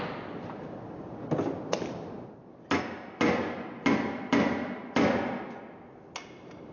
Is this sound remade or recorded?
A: recorded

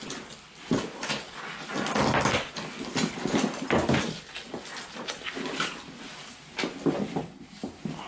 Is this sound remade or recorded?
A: recorded